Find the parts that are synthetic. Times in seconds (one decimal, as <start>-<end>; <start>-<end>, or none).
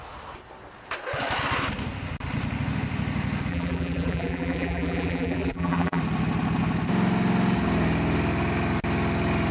3.5-6.0